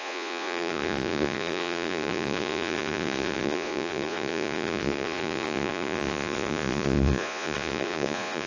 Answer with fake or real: fake